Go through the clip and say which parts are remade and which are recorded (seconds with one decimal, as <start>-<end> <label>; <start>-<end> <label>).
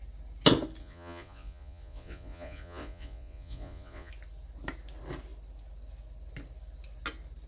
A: 0.0-0.8 recorded; 0.8-4.1 remade; 4.1-7.5 recorded